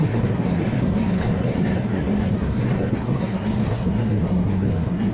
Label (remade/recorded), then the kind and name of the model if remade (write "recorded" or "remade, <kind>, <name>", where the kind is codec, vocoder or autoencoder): remade, codec, SNAC